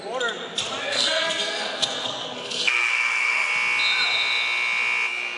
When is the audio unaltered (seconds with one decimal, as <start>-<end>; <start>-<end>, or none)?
0.0-0.8; 3.5-5.4